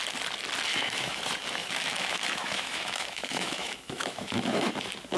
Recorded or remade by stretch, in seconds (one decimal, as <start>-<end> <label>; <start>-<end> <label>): 0.0-0.7 recorded; 0.7-1.2 remade; 1.2-1.6 recorded; 1.6-4.7 remade; 4.7-5.2 recorded

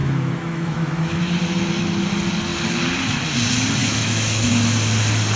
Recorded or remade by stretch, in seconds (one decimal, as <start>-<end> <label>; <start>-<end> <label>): 0.0-1.2 remade; 1.2-3.8 recorded; 3.8-4.5 remade; 4.5-5.4 recorded

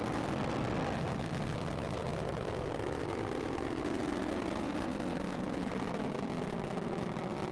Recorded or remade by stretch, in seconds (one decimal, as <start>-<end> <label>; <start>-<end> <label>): 0.0-2.1 recorded; 2.1-3.0 remade; 3.0-5.1 recorded; 5.1-5.7 remade; 5.7-7.5 recorded